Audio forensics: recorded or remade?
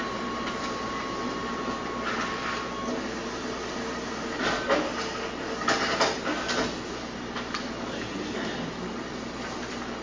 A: recorded